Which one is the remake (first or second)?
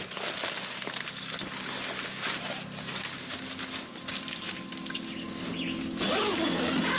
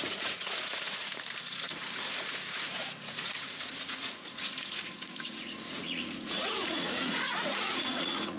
second